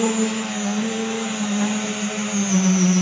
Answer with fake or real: real